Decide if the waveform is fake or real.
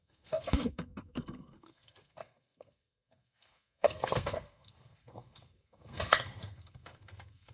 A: fake